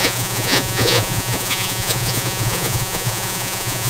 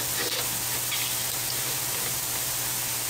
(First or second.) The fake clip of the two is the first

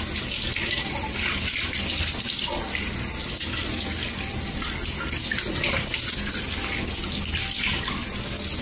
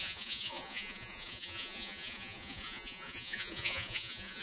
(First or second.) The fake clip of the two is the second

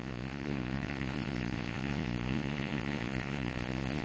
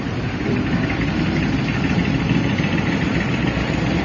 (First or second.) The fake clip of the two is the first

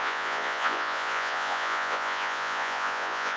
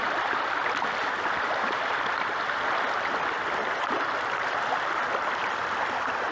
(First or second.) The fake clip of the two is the first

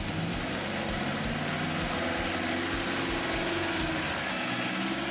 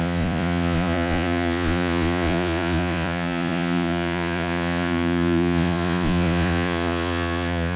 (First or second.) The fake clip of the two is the second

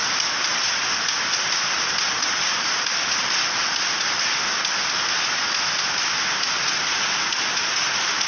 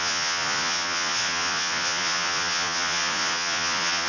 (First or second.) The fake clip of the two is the second